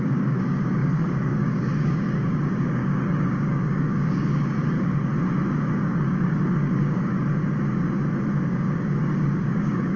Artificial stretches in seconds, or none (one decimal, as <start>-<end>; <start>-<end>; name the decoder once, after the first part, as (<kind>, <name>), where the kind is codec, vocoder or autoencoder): 0.0-5.1 (codec, DAC); 5.7-7.4; 8.5-10.0